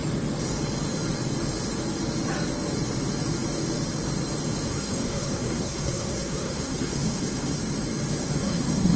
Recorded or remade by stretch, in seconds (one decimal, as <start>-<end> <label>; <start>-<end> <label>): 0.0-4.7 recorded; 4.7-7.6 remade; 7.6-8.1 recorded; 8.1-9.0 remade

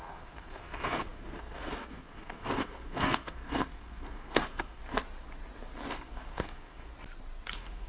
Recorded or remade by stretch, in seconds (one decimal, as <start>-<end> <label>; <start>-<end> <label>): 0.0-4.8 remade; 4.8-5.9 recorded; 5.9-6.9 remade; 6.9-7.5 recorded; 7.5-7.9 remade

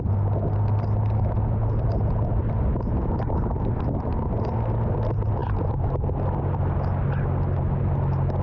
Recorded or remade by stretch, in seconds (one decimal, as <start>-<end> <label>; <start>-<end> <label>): 0.0-8.4 recorded